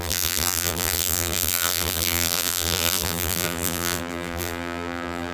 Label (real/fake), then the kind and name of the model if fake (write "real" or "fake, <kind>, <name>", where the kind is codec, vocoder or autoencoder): fake, vocoder, BigVGAN v2